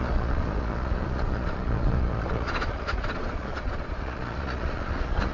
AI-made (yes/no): yes